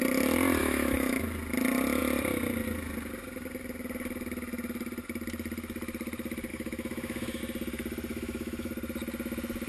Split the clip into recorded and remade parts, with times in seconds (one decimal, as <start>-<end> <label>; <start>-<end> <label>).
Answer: 0.0-0.6 recorded; 0.6-1.2 remade; 1.2-6.5 recorded; 6.5-7.4 remade; 7.4-8.1 recorded; 8.1-8.7 remade; 8.7-9.7 recorded